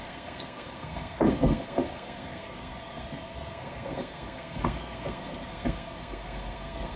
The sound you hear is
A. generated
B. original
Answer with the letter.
A